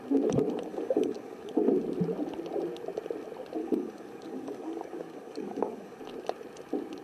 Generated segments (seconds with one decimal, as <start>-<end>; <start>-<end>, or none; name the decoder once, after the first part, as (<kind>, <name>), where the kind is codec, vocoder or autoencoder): 0.7-1.5 (codec, DAC); 3.6-6.0